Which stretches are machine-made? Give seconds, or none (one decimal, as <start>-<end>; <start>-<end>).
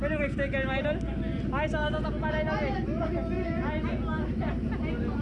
none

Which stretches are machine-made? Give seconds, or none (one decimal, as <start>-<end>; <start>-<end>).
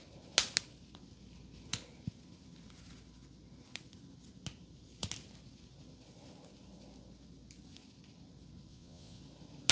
8.7-9.2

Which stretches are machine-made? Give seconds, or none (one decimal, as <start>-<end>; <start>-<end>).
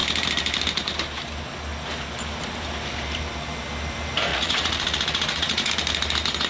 4.3-5.7